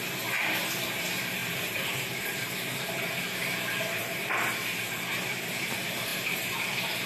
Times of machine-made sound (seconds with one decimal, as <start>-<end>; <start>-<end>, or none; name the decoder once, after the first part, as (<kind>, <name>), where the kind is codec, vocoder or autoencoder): 0.0-7.1 (vocoder, BigVGAN v2)